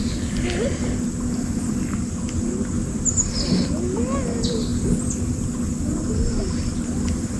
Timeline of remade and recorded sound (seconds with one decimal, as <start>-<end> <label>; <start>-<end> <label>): 0.0-7.4 recorded